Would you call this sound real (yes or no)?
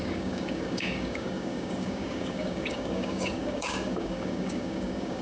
no